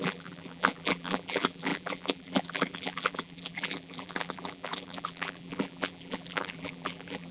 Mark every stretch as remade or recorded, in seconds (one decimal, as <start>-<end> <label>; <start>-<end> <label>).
0.0-7.3 remade